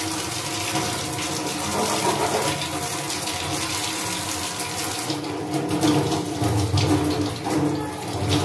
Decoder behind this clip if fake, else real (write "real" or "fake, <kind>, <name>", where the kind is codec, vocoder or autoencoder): real